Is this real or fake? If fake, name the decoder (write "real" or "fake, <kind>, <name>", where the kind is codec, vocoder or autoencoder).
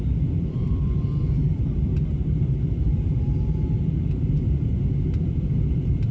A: fake, vocoder, BigVGAN v2